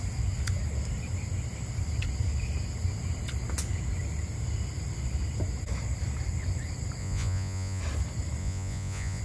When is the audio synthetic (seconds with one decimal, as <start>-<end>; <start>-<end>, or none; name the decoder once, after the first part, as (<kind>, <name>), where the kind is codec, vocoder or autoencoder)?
7.0-7.8 (vocoder, Vocos); 8.4-9.2